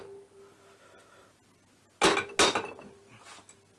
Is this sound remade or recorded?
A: recorded